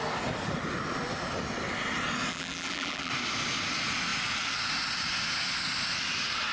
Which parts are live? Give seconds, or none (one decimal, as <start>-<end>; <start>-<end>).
0.0-2.3; 3.1-6.5